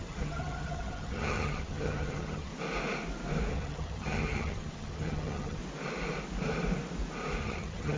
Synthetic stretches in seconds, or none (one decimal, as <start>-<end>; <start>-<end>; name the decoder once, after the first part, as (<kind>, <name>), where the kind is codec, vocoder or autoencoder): 0.0-2.5 (vocoder, HiFi-GAN); 3.5-5.6; 7.4-8.0